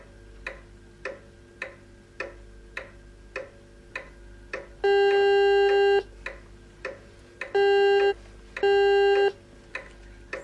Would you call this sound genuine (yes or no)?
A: yes